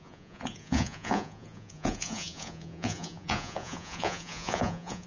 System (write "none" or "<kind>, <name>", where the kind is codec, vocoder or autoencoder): vocoder, Vocos